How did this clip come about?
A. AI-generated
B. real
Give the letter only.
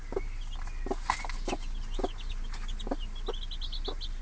B